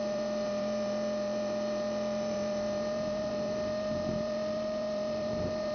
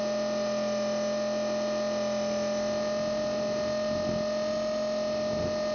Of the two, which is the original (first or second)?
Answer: second